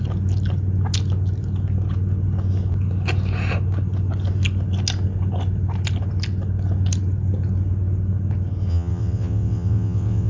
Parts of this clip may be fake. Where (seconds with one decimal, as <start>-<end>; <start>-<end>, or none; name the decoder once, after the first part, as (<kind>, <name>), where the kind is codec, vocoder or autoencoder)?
8.7-10.3 (vocoder, WaveNeXt)